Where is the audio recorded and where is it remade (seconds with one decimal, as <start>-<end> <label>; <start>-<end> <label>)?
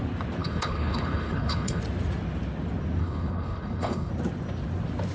0.0-0.4 recorded; 0.4-1.8 remade; 1.8-3.0 recorded; 3.0-4.1 remade; 4.1-5.1 recorded